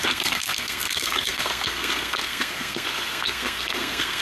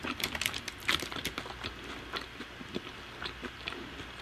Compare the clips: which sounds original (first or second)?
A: second